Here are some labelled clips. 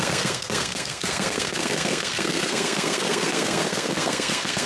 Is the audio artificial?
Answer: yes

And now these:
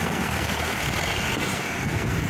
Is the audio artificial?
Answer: yes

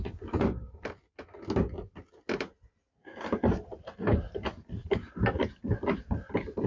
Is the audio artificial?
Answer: no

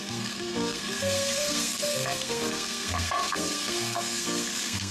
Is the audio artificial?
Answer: yes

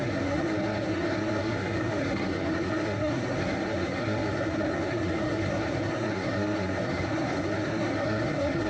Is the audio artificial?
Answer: yes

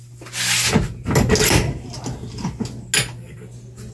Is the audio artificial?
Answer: no